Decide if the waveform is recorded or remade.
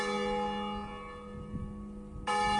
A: recorded